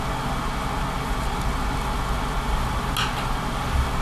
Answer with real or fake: real